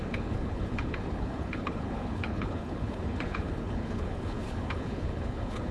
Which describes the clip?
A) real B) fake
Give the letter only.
B